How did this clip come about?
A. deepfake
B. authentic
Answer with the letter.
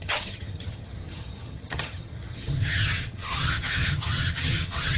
A